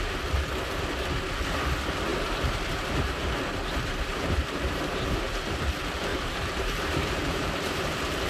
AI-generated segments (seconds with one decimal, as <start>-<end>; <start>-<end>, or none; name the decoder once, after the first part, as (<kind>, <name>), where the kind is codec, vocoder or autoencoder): 2.1-5.4 (vocoder, BigVGAN v2); 6.1-7.8

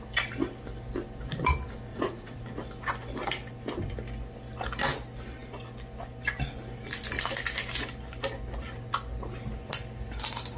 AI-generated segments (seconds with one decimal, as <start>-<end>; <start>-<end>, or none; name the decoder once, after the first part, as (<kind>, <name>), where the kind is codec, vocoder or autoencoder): 1.9-2.4 (vocoder, Vocos)